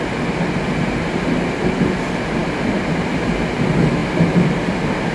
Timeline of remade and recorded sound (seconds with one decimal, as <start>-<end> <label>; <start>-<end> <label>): 0.0-2.4 recorded; 2.4-3.1 remade; 3.1-5.1 recorded